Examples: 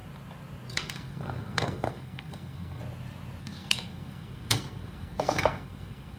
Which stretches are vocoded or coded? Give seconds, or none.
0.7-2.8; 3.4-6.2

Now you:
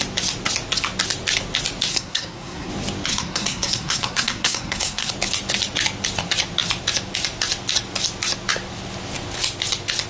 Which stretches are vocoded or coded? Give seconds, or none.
1.9-2.7; 3.1-5.1

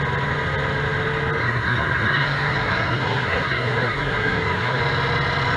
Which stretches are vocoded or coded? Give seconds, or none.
1.4-4.8

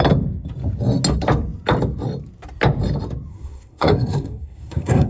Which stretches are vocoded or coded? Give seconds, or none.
3.3-5.1

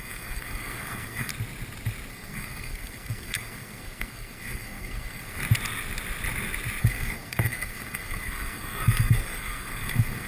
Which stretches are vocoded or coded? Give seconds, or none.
0.0-1.3; 2.1-5.4; 6.8-10.3

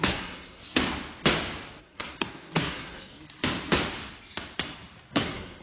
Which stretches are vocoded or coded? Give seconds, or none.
0.0-0.6; 1.8-3.1; 5.1-5.6

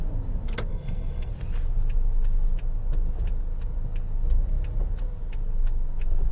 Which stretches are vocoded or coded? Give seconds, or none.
0.7-1.3

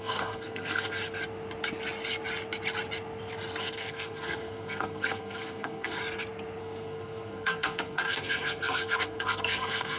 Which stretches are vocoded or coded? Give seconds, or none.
0.0-1.0; 3.6-6.0; 6.6-10.0